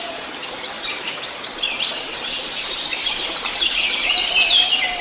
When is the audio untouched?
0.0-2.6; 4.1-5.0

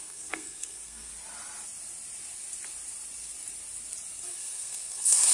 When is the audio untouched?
1.1-4.3

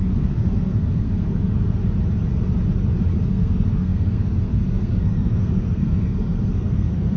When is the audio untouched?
1.8-3.2